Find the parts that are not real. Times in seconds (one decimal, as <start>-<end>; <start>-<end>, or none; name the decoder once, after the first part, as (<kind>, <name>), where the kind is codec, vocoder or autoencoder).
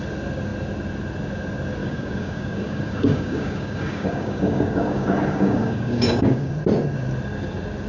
1.8-6.5 (codec, DAC)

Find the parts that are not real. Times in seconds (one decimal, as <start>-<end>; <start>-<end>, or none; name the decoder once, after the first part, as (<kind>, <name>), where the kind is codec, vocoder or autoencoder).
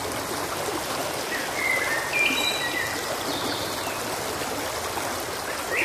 none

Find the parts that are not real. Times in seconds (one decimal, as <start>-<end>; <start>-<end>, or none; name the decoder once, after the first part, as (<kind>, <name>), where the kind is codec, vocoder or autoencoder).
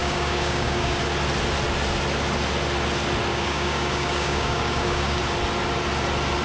0.0-1.0 (codec, DAC); 3.3-5.2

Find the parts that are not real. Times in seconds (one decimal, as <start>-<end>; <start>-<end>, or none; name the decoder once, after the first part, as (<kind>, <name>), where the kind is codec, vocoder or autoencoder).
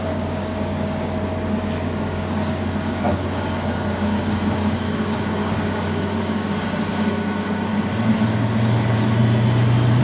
0.0-7.7 (codec, DAC)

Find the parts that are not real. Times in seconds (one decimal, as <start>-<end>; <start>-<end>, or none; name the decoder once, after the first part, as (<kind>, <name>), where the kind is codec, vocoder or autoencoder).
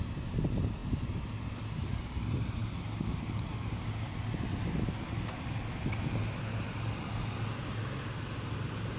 none